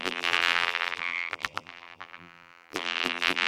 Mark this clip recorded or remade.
remade